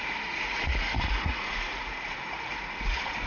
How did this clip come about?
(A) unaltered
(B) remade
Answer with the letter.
B